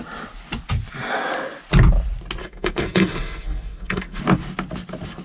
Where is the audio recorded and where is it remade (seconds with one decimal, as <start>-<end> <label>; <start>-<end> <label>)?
0.0-2.4 recorded; 2.4-4.2 remade; 4.2-5.2 recorded